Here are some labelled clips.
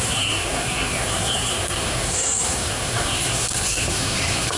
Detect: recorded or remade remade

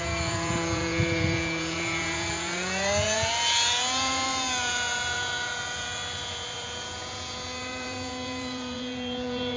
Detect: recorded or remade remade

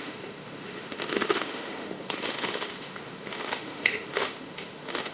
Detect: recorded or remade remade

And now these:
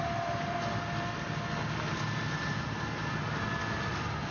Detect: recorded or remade recorded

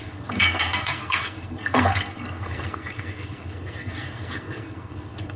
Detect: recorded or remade remade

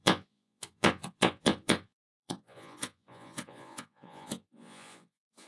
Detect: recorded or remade remade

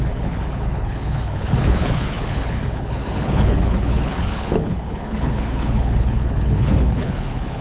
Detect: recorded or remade remade